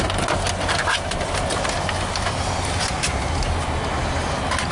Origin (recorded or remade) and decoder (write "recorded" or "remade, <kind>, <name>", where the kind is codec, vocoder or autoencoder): recorded